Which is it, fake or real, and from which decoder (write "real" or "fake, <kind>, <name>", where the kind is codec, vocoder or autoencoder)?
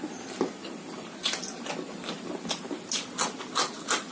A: real